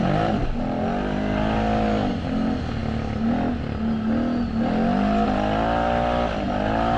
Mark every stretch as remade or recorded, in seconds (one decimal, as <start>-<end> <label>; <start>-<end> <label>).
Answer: 0.0-7.0 recorded